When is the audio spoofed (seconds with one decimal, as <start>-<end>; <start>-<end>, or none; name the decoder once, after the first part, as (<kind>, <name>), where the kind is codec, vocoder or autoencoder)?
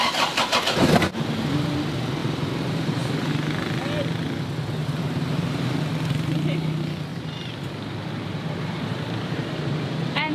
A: 2.2-3.3 (vocoder, BigVGAN v2); 4.8-5.9; 7.1-10.3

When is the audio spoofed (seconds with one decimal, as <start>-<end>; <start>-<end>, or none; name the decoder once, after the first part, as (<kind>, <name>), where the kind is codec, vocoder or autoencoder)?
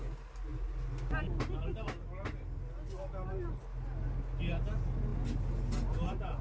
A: none